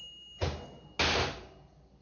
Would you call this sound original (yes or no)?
yes